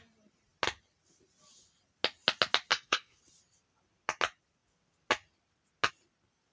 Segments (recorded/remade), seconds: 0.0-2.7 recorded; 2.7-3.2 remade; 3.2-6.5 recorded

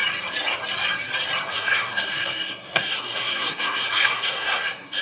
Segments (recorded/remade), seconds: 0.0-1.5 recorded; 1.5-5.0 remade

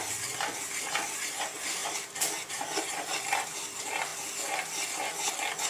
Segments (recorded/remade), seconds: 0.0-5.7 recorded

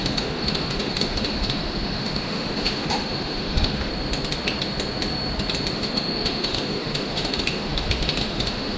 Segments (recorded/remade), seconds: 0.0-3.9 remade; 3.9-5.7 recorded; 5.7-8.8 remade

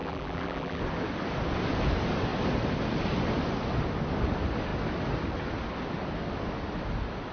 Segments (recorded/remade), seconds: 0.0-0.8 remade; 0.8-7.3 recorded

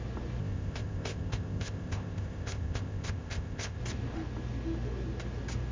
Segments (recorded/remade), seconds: 0.0-0.4 recorded; 0.4-3.8 remade; 3.8-5.7 recorded